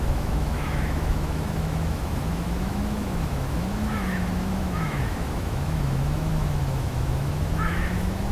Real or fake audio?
fake